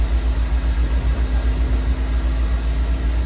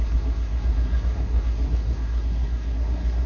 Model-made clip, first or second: second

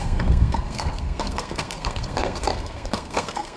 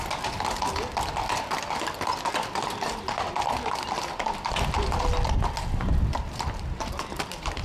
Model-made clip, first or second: first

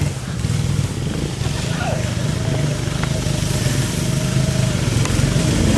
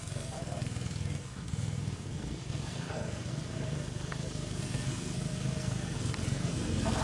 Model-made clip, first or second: second